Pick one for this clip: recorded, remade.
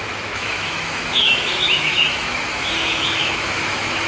remade